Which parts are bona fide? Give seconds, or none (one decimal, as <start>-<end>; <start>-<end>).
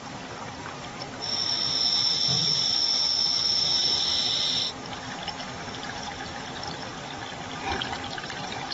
0.0-8.7